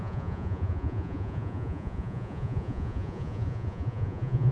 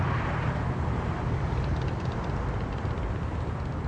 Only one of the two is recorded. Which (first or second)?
second